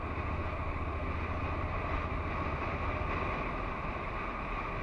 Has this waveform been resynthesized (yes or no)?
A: no